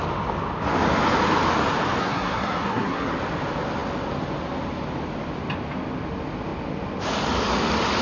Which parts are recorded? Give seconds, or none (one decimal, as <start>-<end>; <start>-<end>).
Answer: 0.0-2.0; 3.1-8.0